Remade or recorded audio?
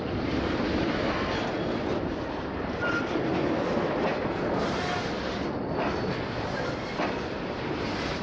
recorded